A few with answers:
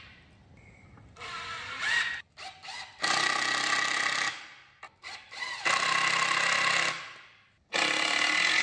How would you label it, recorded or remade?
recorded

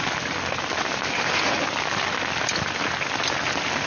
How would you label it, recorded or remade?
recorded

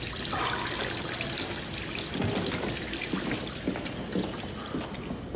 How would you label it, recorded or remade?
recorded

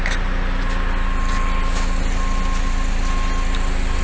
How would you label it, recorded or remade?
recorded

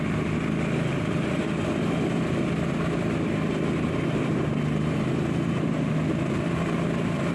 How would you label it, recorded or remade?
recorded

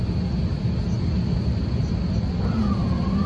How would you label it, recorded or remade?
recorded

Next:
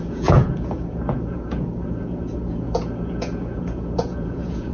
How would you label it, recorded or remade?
remade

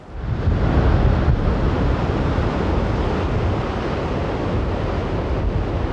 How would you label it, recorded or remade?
recorded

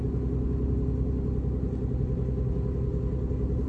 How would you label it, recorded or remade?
recorded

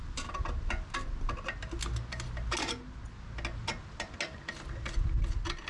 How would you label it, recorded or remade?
recorded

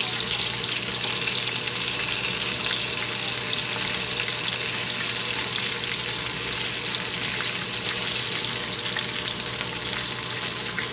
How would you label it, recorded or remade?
recorded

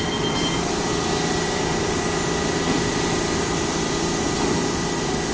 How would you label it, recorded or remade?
recorded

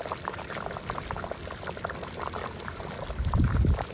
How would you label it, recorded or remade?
recorded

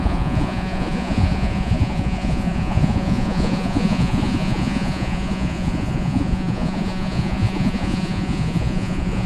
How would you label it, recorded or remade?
remade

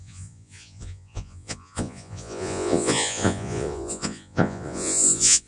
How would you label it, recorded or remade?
remade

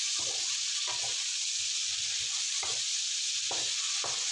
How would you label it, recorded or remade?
recorded